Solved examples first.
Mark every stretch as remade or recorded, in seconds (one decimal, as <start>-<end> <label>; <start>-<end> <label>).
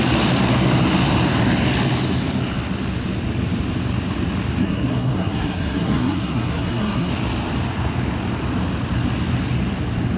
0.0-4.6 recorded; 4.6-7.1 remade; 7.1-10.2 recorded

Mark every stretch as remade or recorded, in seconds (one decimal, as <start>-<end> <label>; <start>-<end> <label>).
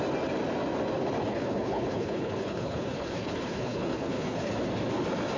0.0-1.3 recorded; 1.3-4.5 remade; 4.5-5.4 recorded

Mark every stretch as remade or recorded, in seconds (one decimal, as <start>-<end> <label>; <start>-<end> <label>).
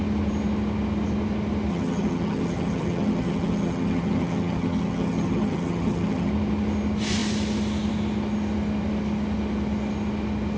0.0-1.7 recorded; 1.7-6.3 remade; 6.3-10.6 recorded